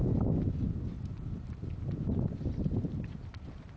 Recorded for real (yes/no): yes